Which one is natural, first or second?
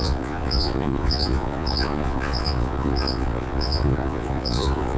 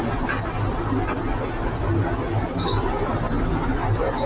second